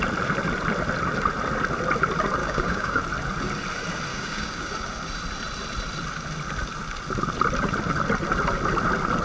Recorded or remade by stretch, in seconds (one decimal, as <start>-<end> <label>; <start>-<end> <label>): 0.0-2.4 recorded; 2.4-3.0 remade; 3.0-4.1 recorded; 4.1-4.7 remade; 4.7-9.2 recorded